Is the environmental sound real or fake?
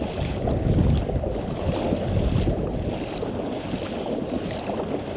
real